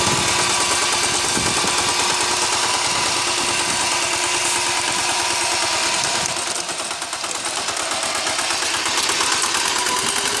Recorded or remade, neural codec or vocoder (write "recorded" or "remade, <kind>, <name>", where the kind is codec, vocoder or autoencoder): recorded